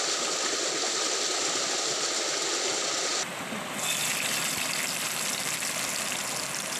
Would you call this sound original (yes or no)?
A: yes